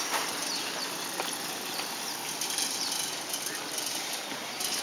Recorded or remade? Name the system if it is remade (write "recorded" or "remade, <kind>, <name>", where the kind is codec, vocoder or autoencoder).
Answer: remade, vocoder, BigVGAN v2